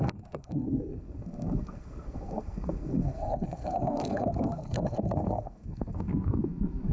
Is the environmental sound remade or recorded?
remade